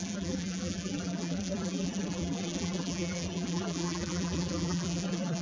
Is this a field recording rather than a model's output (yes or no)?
no